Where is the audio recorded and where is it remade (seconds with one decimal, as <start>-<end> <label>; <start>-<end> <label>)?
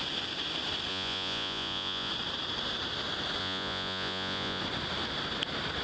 0.0-0.9 recorded; 0.9-2.1 remade; 2.1-3.4 recorded; 3.4-4.6 remade; 4.6-5.8 recorded